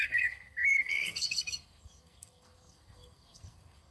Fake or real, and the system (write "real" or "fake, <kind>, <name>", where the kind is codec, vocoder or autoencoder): fake, codec, SNAC